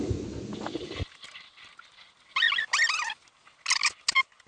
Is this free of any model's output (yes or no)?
yes